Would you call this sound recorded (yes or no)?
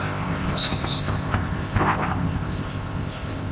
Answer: no